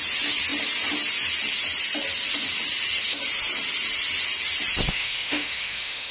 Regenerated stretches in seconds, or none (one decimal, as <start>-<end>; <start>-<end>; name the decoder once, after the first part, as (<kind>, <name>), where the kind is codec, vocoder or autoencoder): 4.9-6.1 (autoencoder, DAC-VAE)